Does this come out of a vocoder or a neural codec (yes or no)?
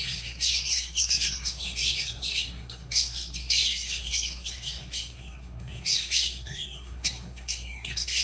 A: yes